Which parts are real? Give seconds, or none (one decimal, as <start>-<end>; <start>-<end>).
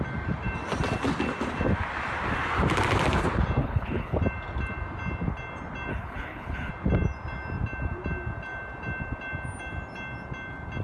0.0-3.6; 4.2-5.9; 6.7-10.8